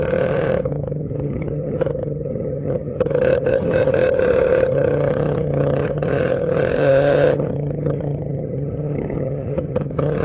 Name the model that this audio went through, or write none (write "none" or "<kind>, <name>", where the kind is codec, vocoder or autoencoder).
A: vocoder, HiFi-GAN